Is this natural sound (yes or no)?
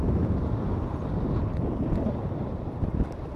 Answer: yes